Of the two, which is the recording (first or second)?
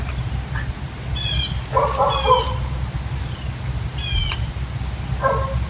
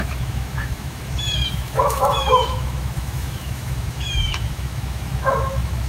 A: first